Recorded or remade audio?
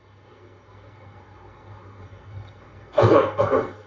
remade